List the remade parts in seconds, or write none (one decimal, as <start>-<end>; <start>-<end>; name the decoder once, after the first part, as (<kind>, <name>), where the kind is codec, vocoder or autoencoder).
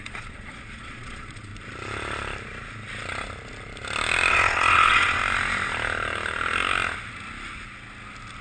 0.0-1.5 (vocoder, Vocos); 4.3-5.2